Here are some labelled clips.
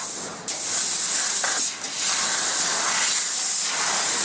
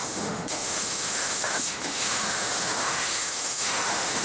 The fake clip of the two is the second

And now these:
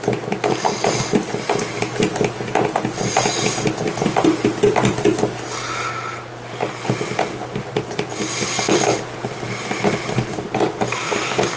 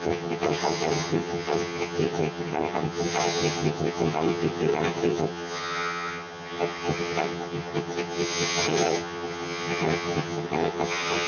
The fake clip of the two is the second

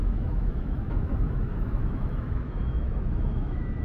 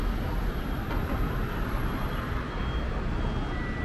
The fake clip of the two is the first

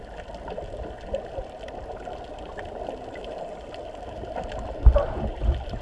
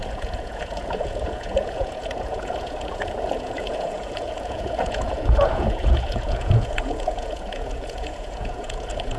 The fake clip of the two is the second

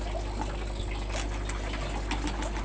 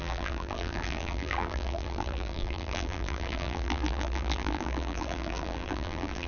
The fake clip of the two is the second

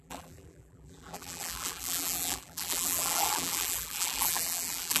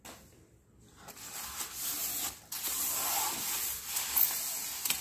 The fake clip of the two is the first